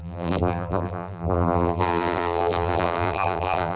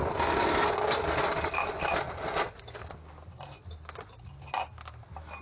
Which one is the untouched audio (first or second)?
second